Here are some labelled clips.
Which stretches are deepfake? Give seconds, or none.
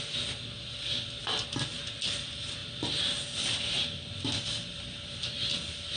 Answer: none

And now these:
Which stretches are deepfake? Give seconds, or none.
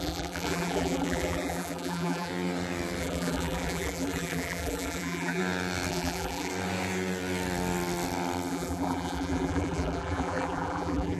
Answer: 0.0-2.3 (vocoder, BigVGAN v2); 3.0-5.4; 5.9-6.5; 8.5-11.2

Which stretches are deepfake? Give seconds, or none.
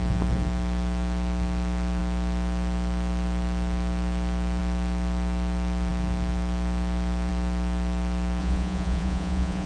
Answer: 8.4-9.7 (vocoder, Vocos)